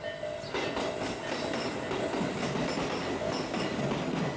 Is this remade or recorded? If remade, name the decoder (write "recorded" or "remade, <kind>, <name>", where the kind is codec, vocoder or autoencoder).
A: recorded